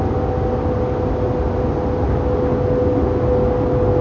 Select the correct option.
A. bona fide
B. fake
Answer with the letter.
A